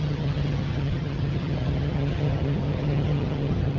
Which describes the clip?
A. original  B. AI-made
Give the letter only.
B